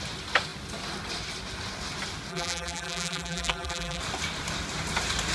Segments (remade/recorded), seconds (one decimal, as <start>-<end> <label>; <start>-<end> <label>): 0.0-2.3 recorded; 2.3-4.0 remade; 4.0-5.3 recorded

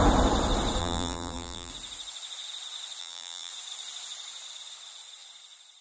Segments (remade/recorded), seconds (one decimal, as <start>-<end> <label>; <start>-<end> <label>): 0.0-0.8 recorded; 0.8-1.7 remade; 1.7-3.0 recorded; 3.0-3.5 remade; 3.5-5.8 recorded

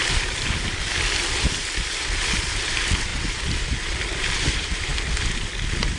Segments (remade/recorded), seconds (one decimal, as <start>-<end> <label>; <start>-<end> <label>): 0.0-3.1 remade; 3.1-4.0 recorded; 4.0-6.0 remade

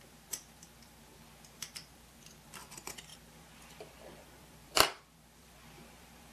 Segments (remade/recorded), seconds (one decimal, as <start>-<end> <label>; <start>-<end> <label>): 0.0-6.3 remade

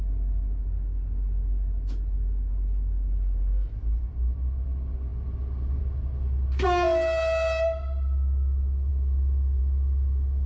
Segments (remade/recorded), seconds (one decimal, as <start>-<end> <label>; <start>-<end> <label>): 0.0-10.5 recorded

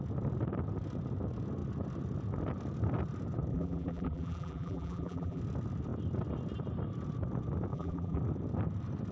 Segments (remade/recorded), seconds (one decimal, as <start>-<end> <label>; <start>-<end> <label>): 0.0-3.5 recorded; 3.5-5.4 remade; 5.4-7.7 recorded; 7.7-8.2 remade; 8.2-9.1 recorded

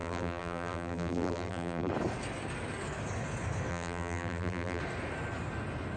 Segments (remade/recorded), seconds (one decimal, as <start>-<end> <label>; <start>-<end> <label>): 0.0-1.9 remade; 1.9-3.7 recorded; 3.7-4.8 remade; 4.8-6.0 recorded